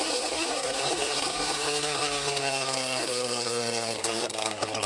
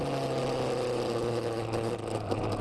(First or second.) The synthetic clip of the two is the first